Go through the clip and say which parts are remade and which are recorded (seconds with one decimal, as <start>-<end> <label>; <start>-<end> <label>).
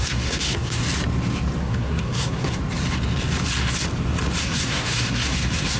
0.0-0.8 remade; 0.8-1.6 recorded; 1.6-2.6 remade; 2.6-4.4 recorded; 4.4-5.8 remade